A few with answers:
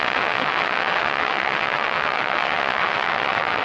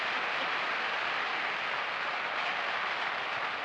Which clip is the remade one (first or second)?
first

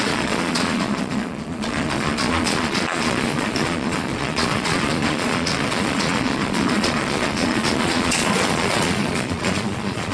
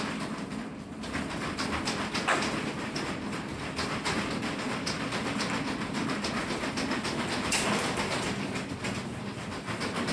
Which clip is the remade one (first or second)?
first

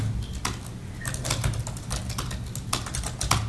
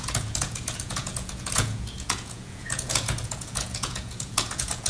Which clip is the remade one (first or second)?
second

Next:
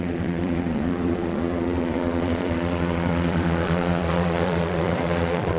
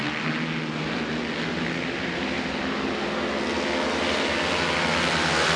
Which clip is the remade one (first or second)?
first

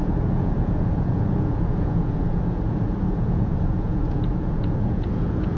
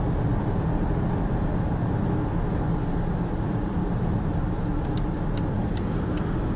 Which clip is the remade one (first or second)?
first